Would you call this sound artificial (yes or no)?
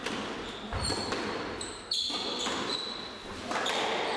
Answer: no